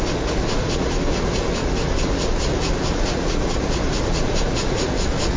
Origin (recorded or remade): remade